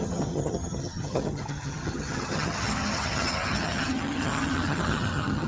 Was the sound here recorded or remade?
remade